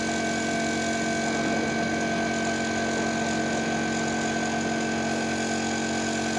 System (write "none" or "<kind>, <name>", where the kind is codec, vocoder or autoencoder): none